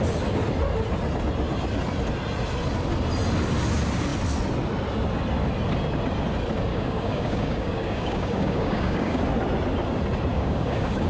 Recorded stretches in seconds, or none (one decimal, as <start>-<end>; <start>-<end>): 0.0-6.7; 9.2-10.3

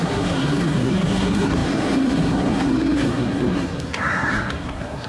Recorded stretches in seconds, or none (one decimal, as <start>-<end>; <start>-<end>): none